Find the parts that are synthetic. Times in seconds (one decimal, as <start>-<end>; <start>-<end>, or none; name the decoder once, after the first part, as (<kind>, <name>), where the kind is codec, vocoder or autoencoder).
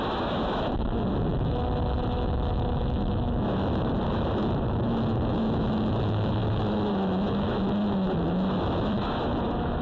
0.0-9.8 (autoencoder, DAC-VAE)